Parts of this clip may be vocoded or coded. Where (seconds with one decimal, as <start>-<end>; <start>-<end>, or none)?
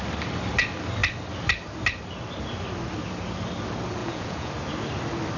4.0-4.5